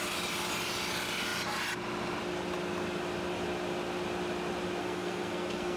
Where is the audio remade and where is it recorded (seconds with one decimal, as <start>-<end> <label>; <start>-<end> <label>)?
0.0-4.8 recorded; 4.8-5.8 remade